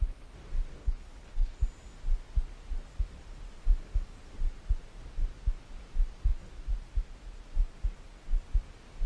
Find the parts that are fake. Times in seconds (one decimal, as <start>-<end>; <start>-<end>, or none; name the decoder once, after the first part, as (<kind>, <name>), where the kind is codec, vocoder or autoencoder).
0.8-1.6 (codec, HILCodec)